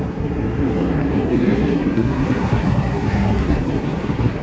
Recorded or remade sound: remade